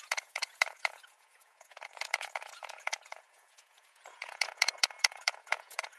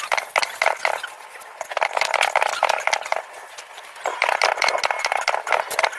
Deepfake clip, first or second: first